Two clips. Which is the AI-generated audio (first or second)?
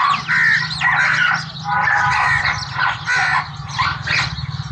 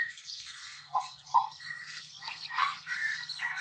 second